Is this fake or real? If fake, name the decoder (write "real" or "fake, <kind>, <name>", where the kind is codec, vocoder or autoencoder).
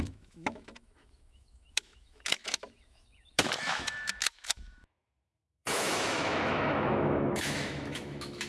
fake, autoencoder, DAC-VAE